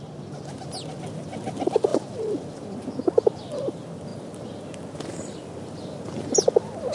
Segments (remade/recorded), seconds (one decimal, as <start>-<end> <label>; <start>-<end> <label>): 0.0-6.9 recorded